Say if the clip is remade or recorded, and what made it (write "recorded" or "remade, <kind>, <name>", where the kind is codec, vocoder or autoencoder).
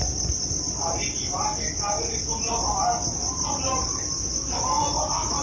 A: recorded